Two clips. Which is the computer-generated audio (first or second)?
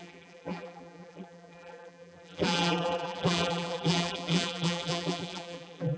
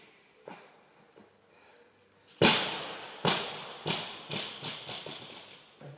first